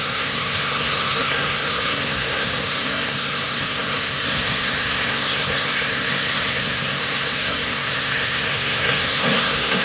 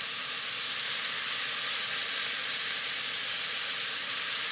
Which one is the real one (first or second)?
second